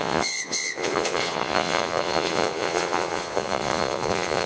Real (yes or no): no